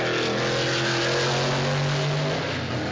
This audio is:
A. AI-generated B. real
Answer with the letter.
B